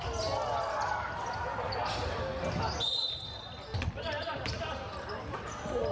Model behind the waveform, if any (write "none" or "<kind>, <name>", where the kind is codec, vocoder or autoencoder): none